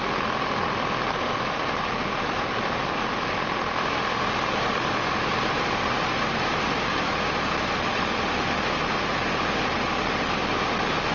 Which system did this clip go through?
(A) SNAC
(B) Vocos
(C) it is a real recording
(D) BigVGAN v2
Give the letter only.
D